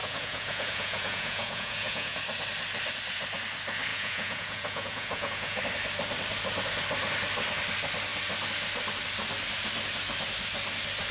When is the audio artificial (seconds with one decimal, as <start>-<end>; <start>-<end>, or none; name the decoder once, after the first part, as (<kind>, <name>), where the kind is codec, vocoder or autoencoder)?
0.0-2.2 (vocoder, Vocos); 3.9-5.6